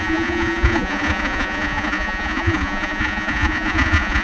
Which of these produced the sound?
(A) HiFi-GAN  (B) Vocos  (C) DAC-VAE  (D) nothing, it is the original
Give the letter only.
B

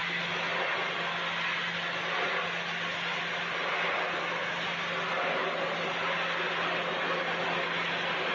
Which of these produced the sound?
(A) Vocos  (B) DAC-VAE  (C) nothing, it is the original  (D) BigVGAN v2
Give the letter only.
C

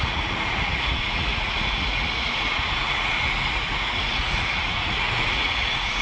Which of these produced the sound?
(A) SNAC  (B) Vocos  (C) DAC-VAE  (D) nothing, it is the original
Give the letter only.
B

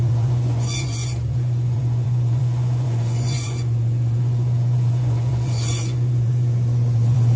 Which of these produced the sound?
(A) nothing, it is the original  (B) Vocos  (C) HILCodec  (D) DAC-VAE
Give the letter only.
B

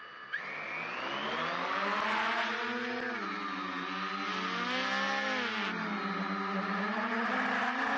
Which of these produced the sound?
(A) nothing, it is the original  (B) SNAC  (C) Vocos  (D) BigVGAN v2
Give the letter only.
A